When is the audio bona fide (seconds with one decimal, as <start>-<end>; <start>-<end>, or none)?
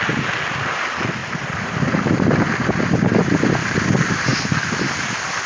0.0-1.2; 3.4-5.5